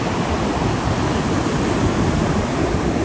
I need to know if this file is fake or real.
real